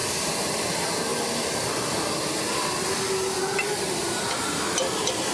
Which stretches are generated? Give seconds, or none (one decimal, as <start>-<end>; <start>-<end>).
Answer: none